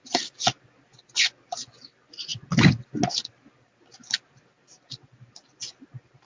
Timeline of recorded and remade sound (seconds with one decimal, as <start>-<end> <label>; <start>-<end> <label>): 0.0-6.2 recorded